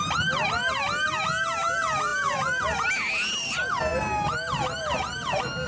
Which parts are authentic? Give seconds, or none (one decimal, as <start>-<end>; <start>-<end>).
0.0-5.7